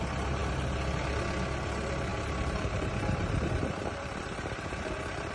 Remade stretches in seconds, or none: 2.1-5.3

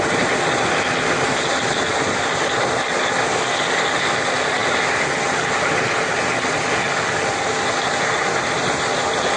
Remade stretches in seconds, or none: none

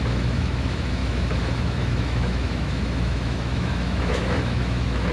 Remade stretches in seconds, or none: 0.0-5.1

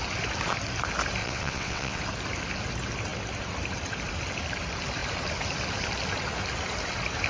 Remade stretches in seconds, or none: 1.2-2.0